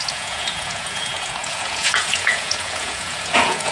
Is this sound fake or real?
fake